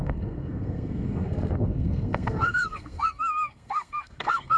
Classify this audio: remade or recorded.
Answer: remade